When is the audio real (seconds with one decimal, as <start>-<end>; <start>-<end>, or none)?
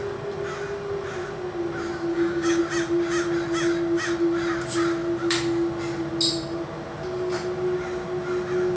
0.0-2.1; 2.6-8.8